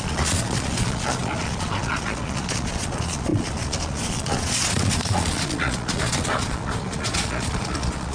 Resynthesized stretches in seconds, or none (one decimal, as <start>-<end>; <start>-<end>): 0.0-8.1